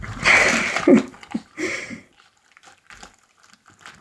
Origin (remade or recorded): recorded